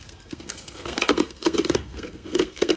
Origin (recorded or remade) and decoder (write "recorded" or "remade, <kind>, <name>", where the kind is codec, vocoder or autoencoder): remade, codec, SNAC